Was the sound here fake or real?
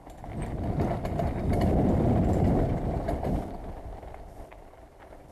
real